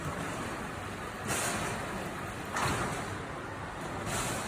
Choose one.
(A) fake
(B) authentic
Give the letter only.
B